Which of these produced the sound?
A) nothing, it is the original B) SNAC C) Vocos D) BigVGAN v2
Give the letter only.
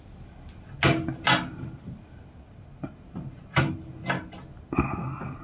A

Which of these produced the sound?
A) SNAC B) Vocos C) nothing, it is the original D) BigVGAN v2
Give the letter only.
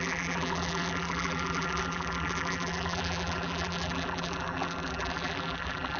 D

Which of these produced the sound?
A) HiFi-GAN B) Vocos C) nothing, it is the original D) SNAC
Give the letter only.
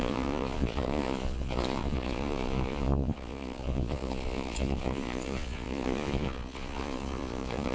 B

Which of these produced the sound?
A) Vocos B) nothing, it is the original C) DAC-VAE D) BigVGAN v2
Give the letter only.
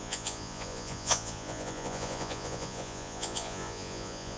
A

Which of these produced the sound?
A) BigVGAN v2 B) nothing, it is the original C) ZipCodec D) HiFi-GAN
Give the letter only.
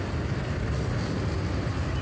B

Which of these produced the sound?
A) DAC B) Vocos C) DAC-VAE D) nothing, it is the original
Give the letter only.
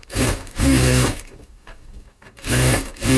A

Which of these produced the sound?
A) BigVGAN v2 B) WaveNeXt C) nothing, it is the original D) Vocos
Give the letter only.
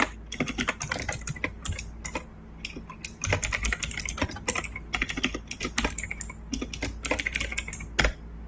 C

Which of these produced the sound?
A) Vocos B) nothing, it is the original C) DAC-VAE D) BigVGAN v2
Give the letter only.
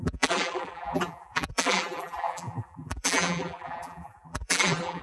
D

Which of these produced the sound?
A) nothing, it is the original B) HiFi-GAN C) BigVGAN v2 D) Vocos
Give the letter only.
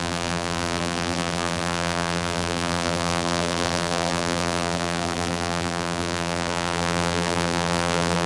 C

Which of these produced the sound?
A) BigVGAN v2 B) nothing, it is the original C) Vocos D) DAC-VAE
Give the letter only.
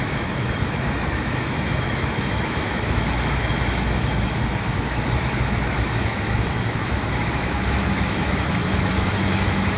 D